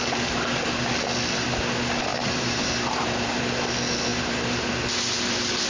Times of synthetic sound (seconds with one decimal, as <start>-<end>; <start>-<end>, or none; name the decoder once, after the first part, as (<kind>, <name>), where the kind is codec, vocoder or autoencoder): 2.1-3.4 (vocoder, BigVGAN v2); 4.1-4.7